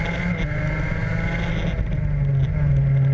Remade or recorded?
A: recorded